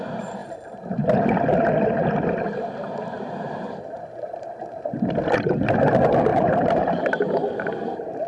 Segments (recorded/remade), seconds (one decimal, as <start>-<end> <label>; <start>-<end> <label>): 0.0-0.4 recorded; 0.4-0.9 remade; 0.9-2.8 recorded; 2.8-4.6 remade; 4.6-6.3 recorded; 6.3-7.0 remade; 7.0-7.4 recorded; 7.4-8.3 remade